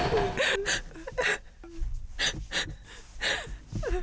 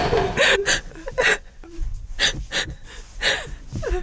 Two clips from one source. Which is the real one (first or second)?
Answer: first